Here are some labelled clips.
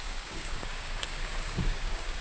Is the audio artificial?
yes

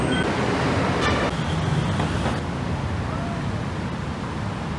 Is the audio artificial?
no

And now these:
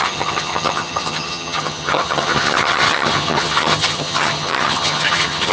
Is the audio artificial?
yes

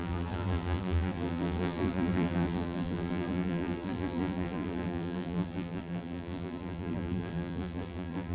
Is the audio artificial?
yes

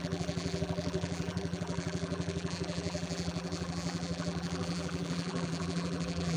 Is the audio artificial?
yes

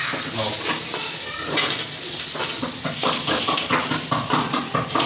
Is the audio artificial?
no